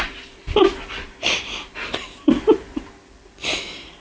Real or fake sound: fake